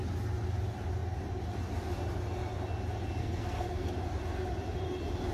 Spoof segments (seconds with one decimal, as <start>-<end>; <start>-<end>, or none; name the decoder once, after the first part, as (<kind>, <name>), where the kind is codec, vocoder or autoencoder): 3.2-3.9 (codec, SNAC)